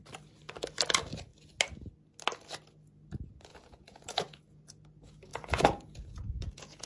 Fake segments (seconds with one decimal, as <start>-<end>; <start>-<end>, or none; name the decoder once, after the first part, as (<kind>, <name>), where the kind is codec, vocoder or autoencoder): 3.5-4.6 (vocoder, Vocos); 5.3-6.9